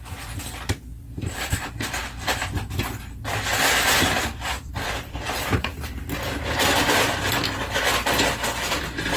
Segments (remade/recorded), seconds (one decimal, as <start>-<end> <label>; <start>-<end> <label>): 0.0-3.5 remade; 3.5-4.0 recorded; 4.0-5.7 remade; 5.7-8.7 recorded; 8.7-9.2 remade